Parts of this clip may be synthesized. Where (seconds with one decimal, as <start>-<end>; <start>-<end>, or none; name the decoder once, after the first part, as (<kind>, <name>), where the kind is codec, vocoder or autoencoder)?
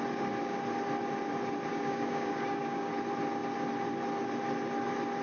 1.7-2.9 (codec, DAC)